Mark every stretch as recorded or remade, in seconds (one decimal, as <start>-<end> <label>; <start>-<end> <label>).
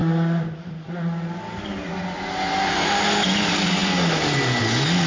0.0-5.1 recorded